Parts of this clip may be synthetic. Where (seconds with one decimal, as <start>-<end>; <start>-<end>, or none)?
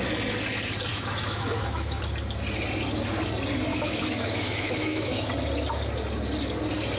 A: 0.9-2.0; 3.7-5.3